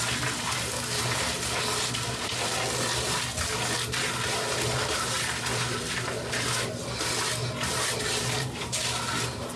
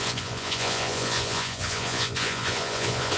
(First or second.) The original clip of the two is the first